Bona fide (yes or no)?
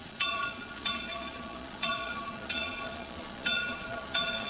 no